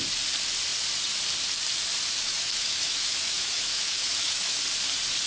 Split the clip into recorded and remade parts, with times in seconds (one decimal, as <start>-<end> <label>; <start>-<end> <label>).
0.0-2.3 recorded; 2.3-4.6 remade; 4.6-5.3 recorded